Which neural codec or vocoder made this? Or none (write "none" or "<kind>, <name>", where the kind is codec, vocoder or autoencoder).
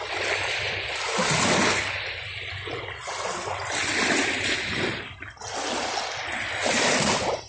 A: none